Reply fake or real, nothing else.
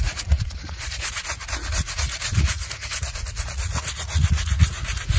fake